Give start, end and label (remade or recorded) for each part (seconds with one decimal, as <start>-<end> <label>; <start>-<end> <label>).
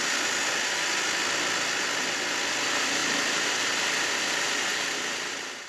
0.0-5.7 recorded